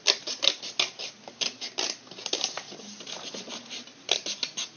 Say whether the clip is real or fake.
real